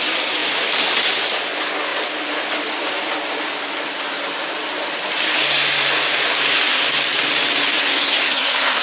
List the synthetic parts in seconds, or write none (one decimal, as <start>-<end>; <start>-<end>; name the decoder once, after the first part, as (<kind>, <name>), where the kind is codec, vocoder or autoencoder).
7.8-8.8 (codec, SNAC)